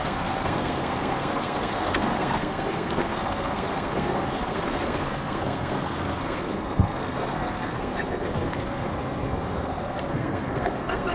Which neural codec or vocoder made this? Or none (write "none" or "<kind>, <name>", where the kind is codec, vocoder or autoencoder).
codec, SNAC